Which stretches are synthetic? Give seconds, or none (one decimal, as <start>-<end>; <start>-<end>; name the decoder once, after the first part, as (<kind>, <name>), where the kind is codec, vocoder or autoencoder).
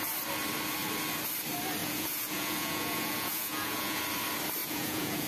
1.8-4.0 (vocoder, Vocos); 4.6-5.3